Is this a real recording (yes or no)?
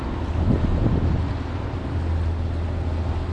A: yes